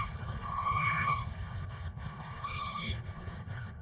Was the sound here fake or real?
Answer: fake